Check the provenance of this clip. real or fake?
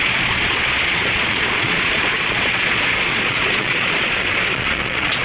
fake